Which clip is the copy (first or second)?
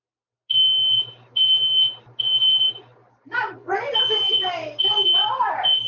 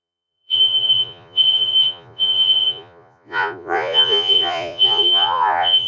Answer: second